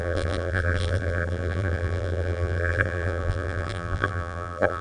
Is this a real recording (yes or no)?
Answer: no